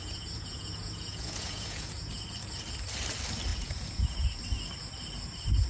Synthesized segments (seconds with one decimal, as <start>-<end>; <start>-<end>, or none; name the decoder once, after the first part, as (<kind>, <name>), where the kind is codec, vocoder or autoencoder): 0.0-2.1 (vocoder, Vocos); 3.5-4.4